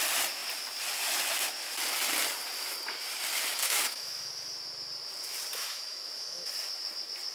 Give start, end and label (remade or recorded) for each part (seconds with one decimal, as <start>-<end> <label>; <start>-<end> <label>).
0.0-3.6 recorded; 3.6-4.3 remade; 4.3-5.6 recorded; 5.6-6.5 remade; 6.5-7.3 recorded